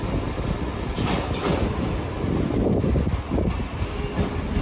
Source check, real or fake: real